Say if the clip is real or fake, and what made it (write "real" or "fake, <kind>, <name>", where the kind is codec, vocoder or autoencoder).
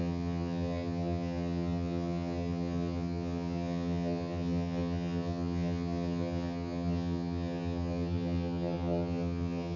fake, vocoder, HiFi-GAN